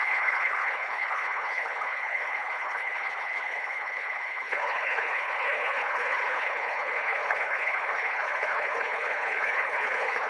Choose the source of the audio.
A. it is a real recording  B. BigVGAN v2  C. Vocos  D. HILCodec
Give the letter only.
D